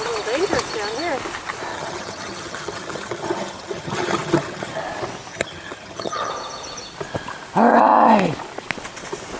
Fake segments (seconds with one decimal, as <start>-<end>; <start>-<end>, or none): 1.7-4.8; 5.3-6.3